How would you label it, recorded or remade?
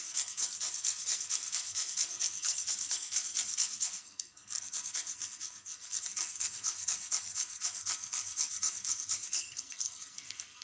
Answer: remade